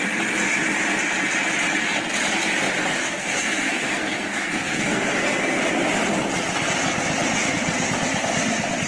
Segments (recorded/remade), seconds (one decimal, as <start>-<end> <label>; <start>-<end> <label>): 0.0-3.0 recorded; 3.0-5.6 remade; 5.6-8.9 recorded